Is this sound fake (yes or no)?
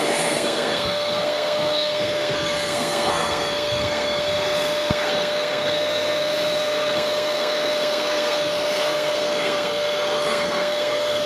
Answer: yes